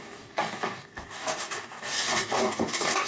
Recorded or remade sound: remade